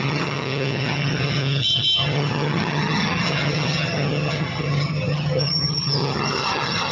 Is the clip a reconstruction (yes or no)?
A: yes